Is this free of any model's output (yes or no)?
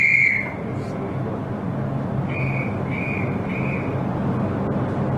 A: yes